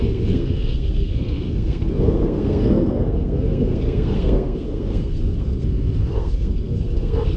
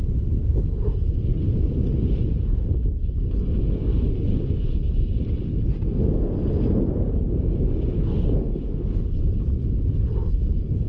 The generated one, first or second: first